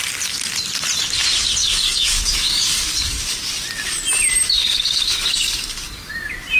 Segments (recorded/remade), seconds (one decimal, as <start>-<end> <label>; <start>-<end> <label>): 0.0-1.6 recorded; 1.6-3.4 remade; 3.4-4.6 recorded; 4.6-6.1 remade; 6.1-6.6 recorded